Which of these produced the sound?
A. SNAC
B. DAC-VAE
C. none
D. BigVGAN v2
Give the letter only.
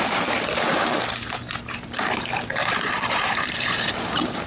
D